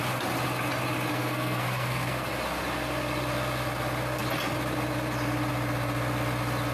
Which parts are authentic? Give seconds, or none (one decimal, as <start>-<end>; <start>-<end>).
0.0-1.1; 2.3-6.7